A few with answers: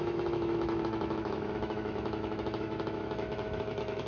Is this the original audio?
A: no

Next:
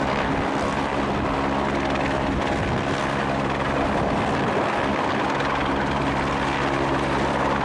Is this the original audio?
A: yes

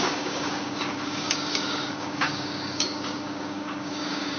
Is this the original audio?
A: no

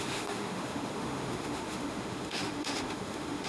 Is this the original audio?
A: no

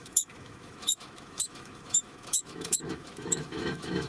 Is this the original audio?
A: no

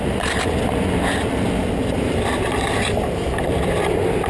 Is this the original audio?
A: no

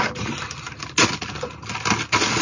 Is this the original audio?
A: yes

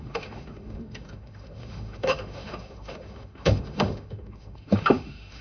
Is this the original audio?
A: no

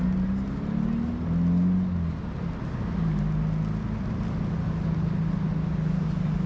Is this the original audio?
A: yes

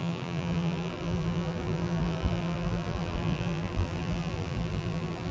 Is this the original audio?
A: no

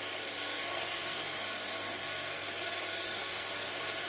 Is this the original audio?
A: no